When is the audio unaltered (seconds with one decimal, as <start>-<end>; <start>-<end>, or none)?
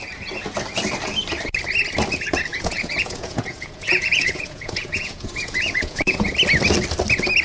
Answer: 0.0-2.5; 6.3-7.4